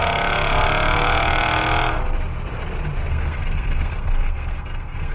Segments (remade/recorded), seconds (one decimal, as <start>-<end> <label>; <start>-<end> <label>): 0.0-3.1 recorded; 3.1-5.1 remade